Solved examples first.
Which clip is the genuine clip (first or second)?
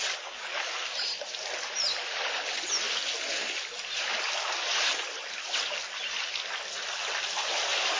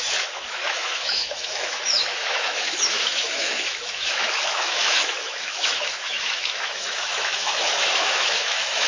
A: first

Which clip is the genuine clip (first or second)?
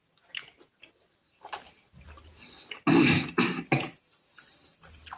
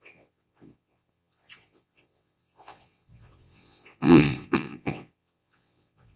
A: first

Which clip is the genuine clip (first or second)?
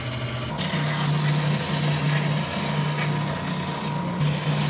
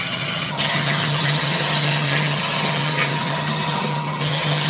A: first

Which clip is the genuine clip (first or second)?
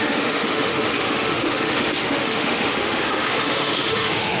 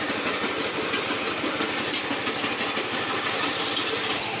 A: second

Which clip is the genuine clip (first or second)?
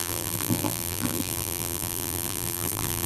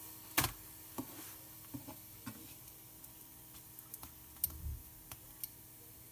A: second